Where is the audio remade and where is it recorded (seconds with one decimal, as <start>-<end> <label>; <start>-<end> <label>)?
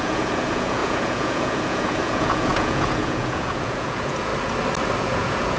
0.0-4.3 remade; 4.3-5.0 recorded; 5.0-5.6 remade